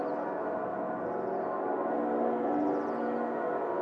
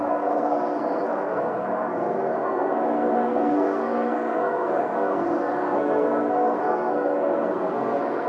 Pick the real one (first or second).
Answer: first